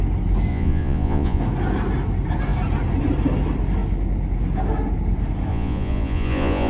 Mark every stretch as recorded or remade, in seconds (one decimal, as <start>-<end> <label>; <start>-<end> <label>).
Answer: 0.0-0.5 recorded; 0.5-1.4 remade; 1.4-5.5 recorded; 5.5-6.7 remade